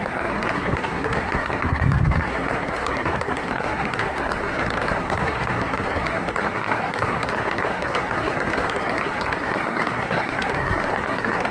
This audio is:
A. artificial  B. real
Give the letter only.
A